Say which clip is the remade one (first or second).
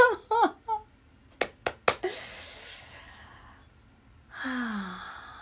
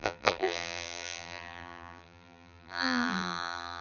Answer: second